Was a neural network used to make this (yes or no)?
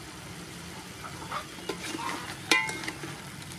no